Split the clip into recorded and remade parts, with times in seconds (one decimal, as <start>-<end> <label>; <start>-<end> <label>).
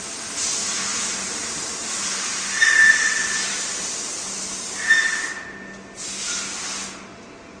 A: 0.0-0.9 recorded; 0.9-2.5 remade; 2.5-3.5 recorded; 3.5-4.4 remade; 4.4-7.6 recorded